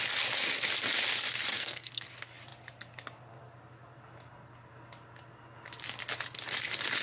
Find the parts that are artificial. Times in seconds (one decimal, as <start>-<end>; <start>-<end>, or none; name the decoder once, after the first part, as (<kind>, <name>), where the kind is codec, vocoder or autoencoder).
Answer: 1.5-2.1 (codec, SNAC)